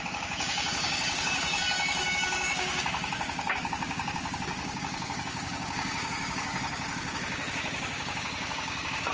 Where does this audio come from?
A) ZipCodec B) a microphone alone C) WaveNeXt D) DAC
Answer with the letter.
D